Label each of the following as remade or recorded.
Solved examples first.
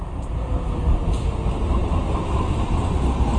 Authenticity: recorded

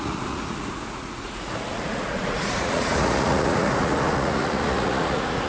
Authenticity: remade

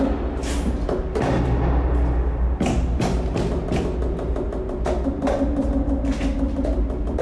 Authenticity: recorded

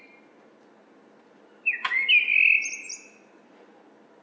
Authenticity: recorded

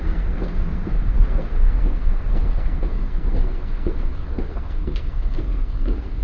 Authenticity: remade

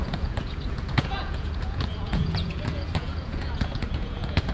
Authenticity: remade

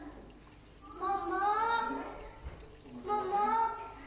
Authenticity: recorded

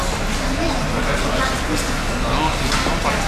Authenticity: recorded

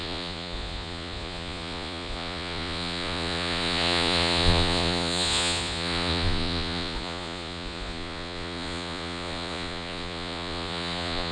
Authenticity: remade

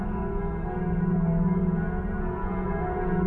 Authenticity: recorded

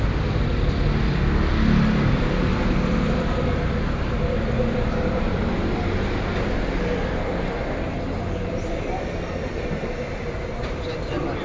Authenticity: recorded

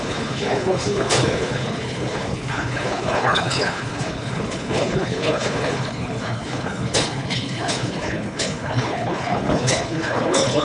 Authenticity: remade